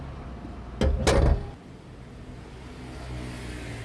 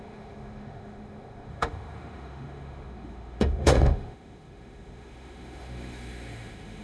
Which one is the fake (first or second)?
second